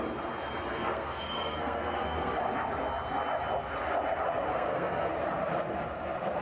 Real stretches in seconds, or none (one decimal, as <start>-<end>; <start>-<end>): 0.0-0.8; 2.4-4.5; 5.1-6.4